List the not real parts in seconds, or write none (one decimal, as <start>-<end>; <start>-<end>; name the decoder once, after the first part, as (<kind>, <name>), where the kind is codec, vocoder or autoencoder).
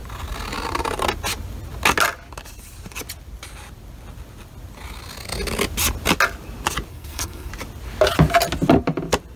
6.9-7.5 (codec, SNAC)